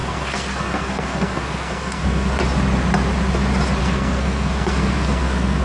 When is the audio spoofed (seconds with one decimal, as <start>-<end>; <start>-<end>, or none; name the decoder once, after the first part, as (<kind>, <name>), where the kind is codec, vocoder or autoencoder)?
0.0-2.4 (codec, SNAC); 3.8-5.6